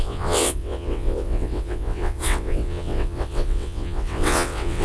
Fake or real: fake